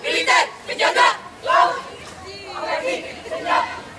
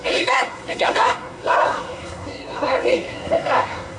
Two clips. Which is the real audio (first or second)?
first